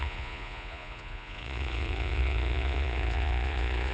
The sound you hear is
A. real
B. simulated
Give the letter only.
B